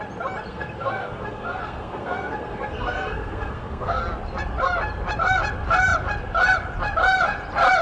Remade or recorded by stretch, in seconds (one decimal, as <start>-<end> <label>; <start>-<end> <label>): 0.0-0.5 recorded; 0.5-4.0 remade; 4.0-7.8 recorded